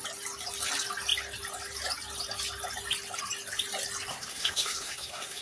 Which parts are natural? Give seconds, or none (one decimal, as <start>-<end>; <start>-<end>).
0.0-4.1